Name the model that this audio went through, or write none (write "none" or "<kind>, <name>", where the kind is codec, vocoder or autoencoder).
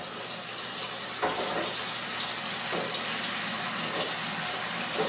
none